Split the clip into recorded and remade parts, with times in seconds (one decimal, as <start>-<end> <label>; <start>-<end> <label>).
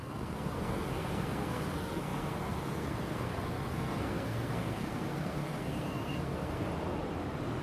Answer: 0.0-6.6 remade; 6.6-7.6 recorded